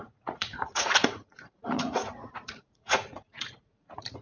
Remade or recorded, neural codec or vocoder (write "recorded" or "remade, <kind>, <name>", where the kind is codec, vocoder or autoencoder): remade, vocoder, Vocos